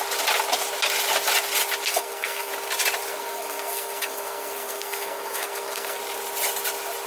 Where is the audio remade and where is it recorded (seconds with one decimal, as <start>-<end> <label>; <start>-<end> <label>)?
0.0-1.9 recorded; 1.9-2.5 remade; 2.5-3.1 recorded; 3.1-6.0 remade; 6.0-7.1 recorded